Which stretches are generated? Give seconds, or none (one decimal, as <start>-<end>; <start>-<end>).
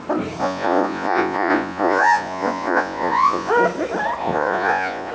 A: 0.4-3.5; 4.2-5.1